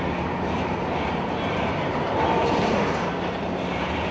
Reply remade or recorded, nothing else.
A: recorded